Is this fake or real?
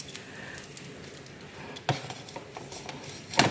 real